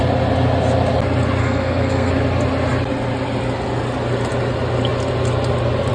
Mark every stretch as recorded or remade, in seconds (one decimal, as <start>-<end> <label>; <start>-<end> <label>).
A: 0.0-1.4 recorded; 1.4-2.1 remade; 2.1-5.9 recorded